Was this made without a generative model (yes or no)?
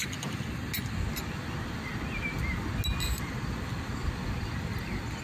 yes